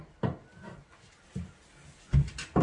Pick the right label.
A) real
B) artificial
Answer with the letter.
A